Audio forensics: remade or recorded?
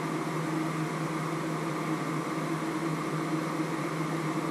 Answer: recorded